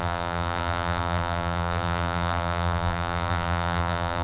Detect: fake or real fake